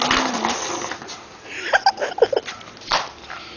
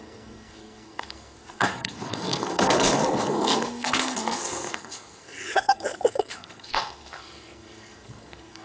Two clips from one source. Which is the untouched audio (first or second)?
first